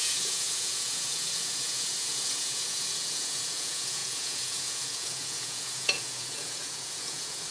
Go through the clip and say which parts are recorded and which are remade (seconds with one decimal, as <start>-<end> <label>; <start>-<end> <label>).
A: 0.0-7.5 remade